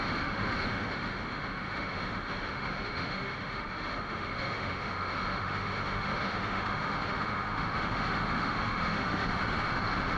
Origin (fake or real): fake